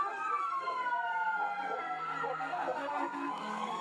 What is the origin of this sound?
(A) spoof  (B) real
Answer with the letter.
A